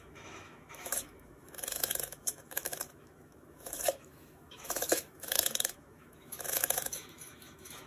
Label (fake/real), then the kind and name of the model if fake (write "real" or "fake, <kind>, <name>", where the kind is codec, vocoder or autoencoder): fake, autoencoder, DAC-VAE